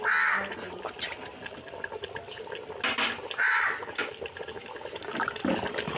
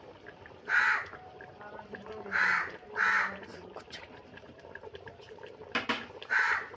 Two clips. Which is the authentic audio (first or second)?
first